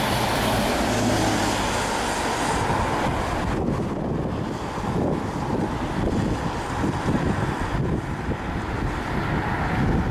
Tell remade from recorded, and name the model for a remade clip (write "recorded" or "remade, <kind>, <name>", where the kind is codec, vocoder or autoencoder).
recorded